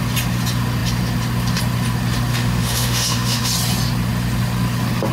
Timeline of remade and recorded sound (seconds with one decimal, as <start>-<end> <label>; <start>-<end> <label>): 0.0-2.3 recorded; 2.3-3.5 remade; 3.5-5.1 recorded